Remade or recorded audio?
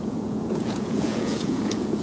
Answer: remade